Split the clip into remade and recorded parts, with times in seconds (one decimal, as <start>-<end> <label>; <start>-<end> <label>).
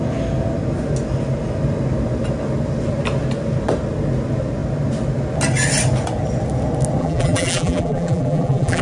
0.0-7.0 recorded; 7.0-8.8 remade